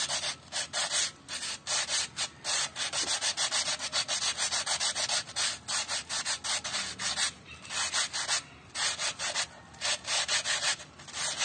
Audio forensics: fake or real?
real